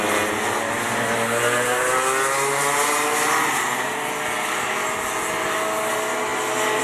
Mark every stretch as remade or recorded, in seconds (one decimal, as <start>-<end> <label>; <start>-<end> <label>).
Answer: 0.0-6.8 recorded